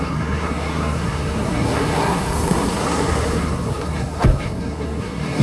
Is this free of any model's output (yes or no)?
no